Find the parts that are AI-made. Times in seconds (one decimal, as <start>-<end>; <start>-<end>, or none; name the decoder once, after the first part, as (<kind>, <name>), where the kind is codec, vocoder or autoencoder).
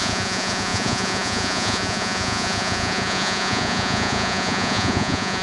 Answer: 0.0-5.4 (vocoder, Vocos)